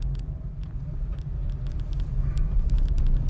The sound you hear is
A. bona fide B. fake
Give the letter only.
A